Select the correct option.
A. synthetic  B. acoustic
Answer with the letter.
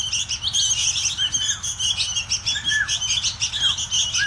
B